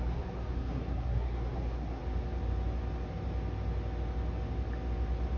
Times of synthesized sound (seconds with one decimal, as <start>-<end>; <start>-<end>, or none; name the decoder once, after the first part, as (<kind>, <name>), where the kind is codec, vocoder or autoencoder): 0.0-2.0 (codec, SNAC)